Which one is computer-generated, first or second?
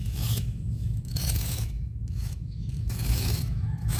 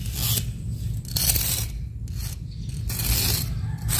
first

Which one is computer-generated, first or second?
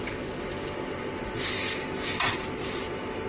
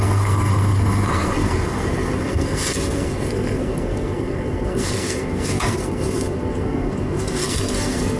second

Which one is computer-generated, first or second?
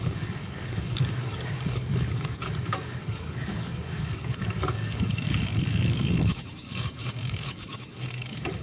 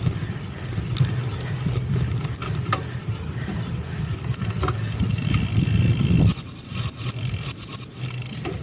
first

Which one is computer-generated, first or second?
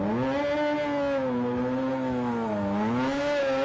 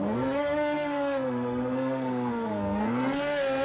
second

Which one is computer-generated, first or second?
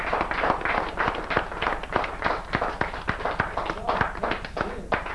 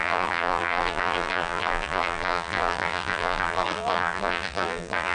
second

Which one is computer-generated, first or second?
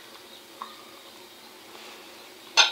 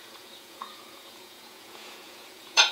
second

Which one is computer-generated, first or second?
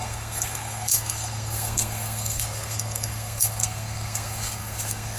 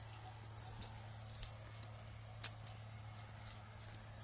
first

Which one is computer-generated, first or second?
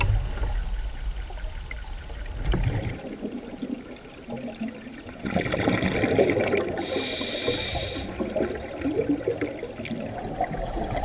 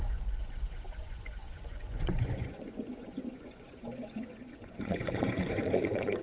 second